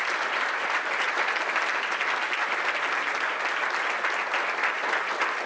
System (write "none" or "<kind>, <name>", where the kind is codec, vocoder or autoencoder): none